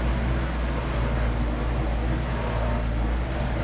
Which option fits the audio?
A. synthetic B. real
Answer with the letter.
B